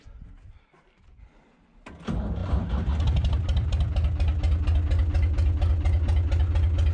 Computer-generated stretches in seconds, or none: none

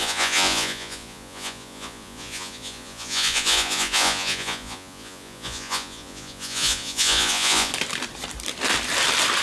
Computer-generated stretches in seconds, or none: 0.0-7.7